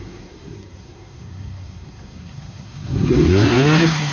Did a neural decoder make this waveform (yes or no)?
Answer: yes